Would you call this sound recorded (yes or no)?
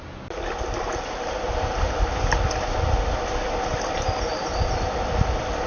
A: yes